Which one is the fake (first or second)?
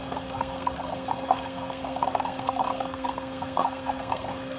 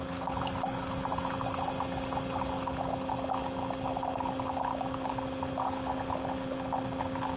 first